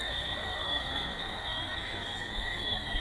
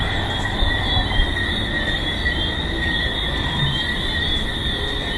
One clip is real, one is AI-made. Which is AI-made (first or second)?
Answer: first